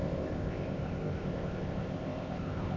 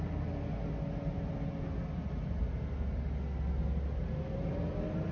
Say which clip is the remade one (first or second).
first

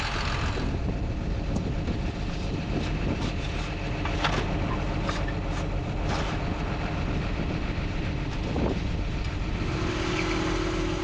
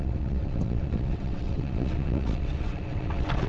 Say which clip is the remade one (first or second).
second